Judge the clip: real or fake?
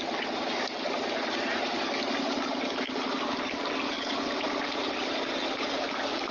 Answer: real